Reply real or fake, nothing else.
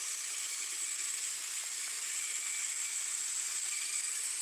real